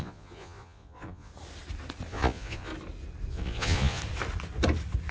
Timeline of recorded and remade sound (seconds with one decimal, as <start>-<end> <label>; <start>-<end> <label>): 0.0-1.3 remade; 1.3-2.1 recorded; 2.1-2.7 remade; 2.7-3.3 recorded; 3.3-4.0 remade; 4.0-5.1 recorded

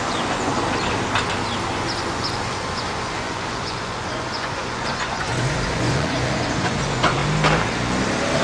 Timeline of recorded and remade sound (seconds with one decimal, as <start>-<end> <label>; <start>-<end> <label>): 0.0-0.5 remade; 0.5-1.7 recorded; 1.7-7.2 remade; 7.2-8.4 recorded